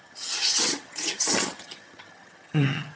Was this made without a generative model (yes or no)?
no